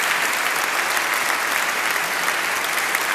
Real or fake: real